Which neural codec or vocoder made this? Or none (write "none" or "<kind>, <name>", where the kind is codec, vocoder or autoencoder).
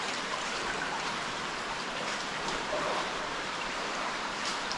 vocoder, BigVGAN v2